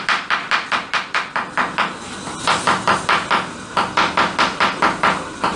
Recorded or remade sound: recorded